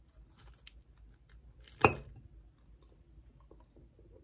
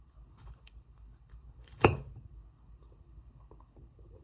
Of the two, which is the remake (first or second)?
second